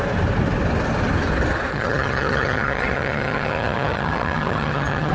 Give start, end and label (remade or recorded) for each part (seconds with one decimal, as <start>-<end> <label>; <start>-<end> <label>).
0.0-1.7 recorded; 1.7-5.1 remade